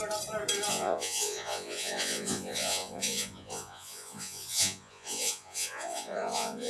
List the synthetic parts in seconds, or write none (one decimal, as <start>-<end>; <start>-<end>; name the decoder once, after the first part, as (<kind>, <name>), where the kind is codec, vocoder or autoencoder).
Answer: 0.7-6.7 (vocoder, Vocos)